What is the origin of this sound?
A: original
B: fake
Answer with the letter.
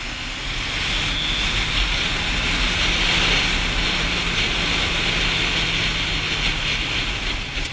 A